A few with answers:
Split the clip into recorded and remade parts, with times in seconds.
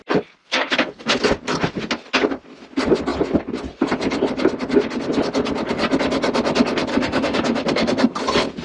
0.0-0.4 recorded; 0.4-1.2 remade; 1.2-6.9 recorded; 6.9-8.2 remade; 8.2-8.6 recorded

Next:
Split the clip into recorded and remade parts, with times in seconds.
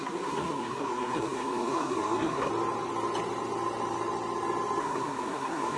0.0-2.5 remade; 2.5-4.8 recorded; 4.8-5.8 remade